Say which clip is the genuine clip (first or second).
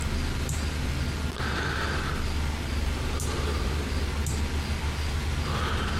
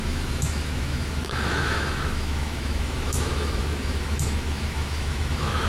first